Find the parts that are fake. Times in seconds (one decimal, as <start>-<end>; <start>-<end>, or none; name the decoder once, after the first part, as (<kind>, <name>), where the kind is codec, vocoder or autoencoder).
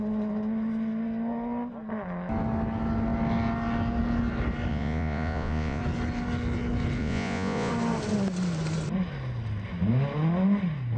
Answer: 4.7-5.8 (vocoder, Vocos); 7.0-7.7